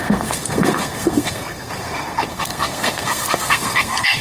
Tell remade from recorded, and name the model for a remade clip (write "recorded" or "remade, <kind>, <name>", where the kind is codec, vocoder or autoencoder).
remade, codec, SNAC